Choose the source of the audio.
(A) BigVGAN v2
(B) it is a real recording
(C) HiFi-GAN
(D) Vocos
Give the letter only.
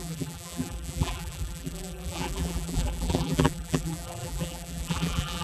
A